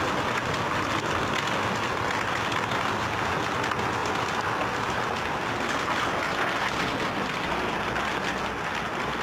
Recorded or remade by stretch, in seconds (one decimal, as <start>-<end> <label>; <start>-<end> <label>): 0.0-9.2 recorded